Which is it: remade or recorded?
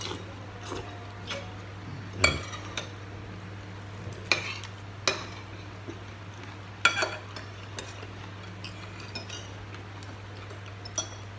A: recorded